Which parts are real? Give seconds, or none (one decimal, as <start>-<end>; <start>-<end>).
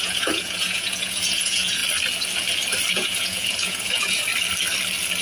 1.8-2.9; 4.2-5.2